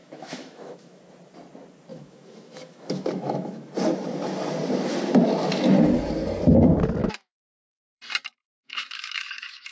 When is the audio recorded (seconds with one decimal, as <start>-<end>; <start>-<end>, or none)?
1.0-1.9; 3.7-7.0; 8.0-8.4